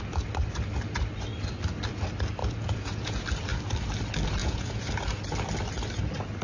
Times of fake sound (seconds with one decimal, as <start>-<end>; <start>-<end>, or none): 2.4-3.2; 4.4-4.9